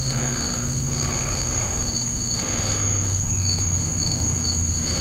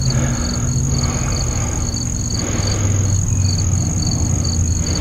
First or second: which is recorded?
second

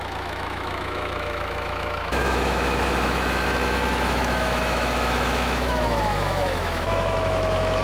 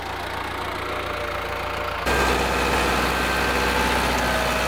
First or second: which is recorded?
second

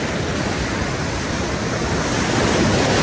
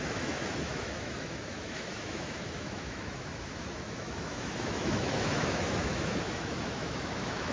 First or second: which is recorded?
first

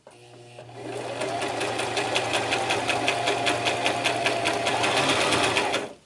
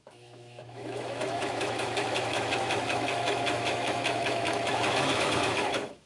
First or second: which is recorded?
first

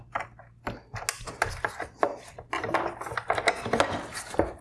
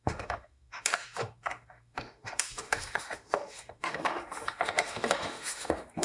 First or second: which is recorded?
first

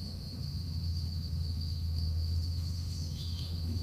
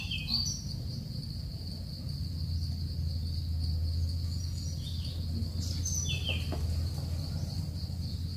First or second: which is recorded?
second